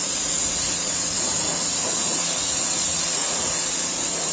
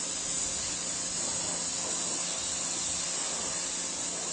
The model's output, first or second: first